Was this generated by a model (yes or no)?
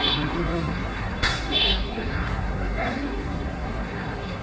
yes